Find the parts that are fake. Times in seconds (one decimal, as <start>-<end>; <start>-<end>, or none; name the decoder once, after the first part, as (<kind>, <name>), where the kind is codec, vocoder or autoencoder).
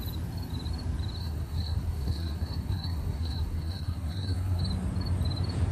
1.2-4.6 (codec, SNAC)